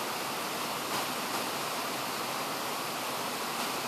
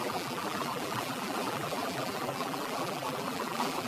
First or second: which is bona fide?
first